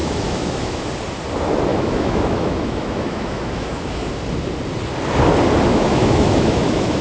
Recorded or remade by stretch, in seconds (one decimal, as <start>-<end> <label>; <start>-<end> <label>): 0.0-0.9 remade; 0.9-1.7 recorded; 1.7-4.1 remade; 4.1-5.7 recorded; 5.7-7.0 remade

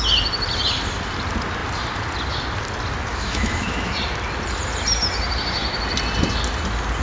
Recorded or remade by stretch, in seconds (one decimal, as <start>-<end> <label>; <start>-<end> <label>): 0.0-3.1 recorded; 3.1-3.9 remade; 3.9-7.0 recorded

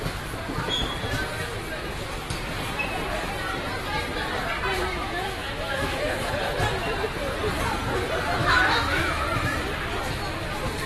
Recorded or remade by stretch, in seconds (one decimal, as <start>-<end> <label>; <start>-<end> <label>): 0.0-4.9 recorded; 4.9-6.3 remade; 6.3-8.4 recorded; 8.4-9.2 remade; 9.2-10.9 recorded

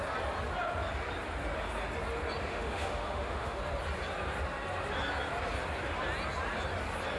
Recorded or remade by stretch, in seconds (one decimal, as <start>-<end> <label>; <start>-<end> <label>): 0.0-2.5 recorded; 2.5-3.6 remade; 3.6-7.2 recorded